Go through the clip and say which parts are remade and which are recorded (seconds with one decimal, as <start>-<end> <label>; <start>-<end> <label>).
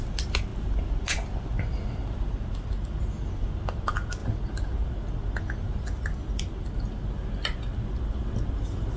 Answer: 0.0-9.0 recorded